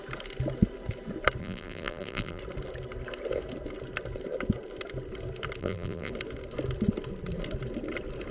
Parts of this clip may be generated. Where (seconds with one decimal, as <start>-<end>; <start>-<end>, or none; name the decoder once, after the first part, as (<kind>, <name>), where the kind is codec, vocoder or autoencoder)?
1.4-2.4 (vocoder, BigVGAN v2); 5.6-6.1